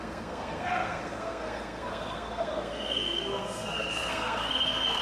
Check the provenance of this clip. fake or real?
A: fake